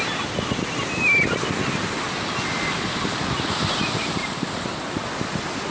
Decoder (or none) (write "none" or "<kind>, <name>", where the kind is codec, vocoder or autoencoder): none